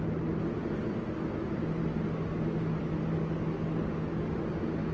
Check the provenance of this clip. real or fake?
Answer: real